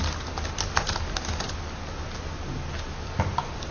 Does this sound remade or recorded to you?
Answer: recorded